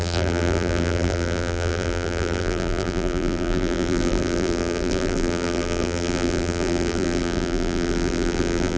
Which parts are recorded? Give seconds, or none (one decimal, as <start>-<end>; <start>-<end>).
none